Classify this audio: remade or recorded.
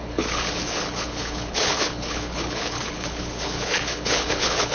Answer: remade